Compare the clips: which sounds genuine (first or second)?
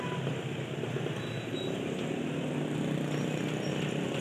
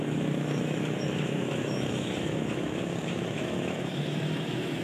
first